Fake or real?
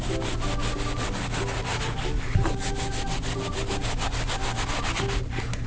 real